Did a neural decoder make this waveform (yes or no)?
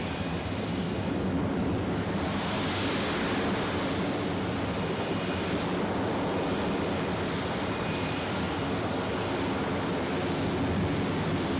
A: no